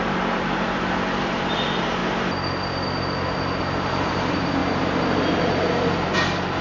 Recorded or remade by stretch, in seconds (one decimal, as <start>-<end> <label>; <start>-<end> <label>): 0.0-2.0 remade; 2.0-3.6 recorded; 3.6-4.6 remade; 4.6-6.6 recorded